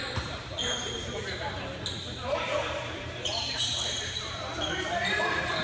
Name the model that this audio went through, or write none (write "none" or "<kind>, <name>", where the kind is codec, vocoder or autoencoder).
vocoder, BigVGAN v2